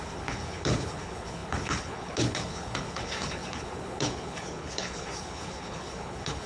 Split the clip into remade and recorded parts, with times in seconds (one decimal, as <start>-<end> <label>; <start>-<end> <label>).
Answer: 0.0-6.5 remade